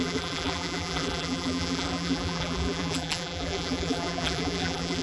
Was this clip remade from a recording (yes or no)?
yes